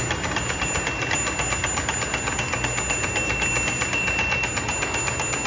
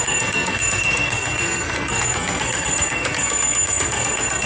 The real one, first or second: first